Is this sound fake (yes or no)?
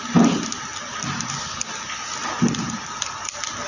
no